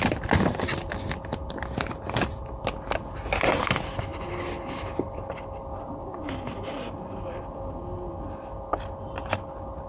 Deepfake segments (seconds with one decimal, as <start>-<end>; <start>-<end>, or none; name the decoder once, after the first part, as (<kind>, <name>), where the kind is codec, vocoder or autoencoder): none